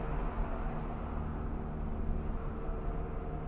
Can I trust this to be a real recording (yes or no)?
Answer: yes